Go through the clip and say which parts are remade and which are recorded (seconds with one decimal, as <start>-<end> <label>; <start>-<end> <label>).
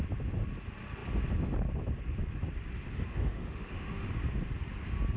0.0-3.1 recorded; 3.1-4.1 remade; 4.1-5.2 recorded